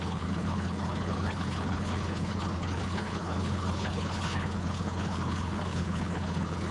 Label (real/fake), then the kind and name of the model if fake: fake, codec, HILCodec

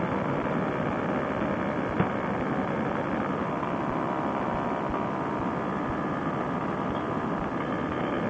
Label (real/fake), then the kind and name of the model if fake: real